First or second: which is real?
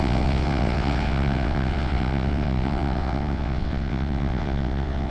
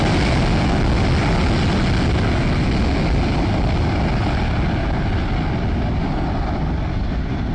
second